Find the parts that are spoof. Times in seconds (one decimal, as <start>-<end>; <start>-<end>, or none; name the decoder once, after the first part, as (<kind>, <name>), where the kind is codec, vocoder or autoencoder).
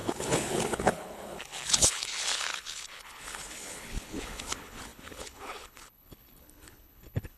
0.0-7.4 (codec, HILCodec)